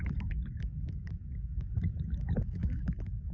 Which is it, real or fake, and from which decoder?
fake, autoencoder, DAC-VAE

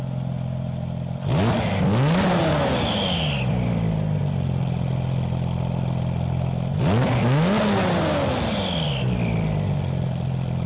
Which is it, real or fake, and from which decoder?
real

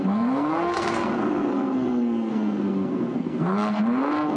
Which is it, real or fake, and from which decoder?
fake, codec, SNAC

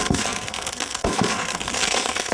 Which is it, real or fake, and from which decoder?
fake, codec, SNAC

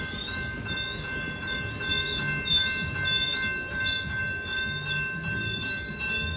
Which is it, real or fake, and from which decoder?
real